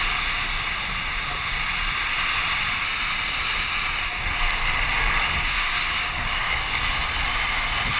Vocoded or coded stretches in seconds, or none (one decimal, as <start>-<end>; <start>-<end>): 4.9-6.9

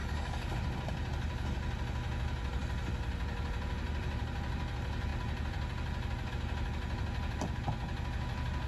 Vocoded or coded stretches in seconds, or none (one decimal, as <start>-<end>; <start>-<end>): 0.0-0.5

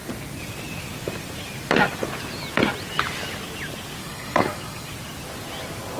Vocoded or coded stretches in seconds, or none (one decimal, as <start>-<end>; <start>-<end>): 4.0-4.9

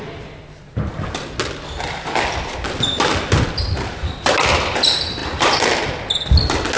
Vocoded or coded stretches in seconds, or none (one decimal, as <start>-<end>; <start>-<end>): none

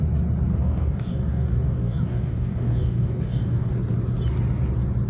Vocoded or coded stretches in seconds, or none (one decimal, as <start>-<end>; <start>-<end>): 0.6-3.7

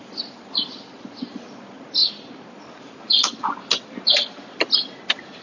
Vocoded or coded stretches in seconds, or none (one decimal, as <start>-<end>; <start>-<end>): none

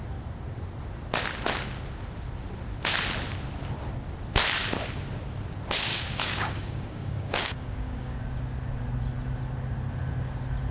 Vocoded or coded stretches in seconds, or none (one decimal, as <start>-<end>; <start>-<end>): 5.9-8.2